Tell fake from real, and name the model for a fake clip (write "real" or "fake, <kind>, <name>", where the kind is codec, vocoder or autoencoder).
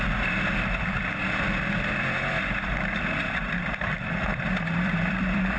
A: fake, vocoder, BigVGAN v2